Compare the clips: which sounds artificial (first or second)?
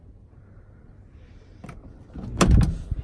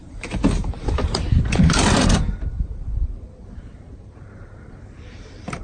second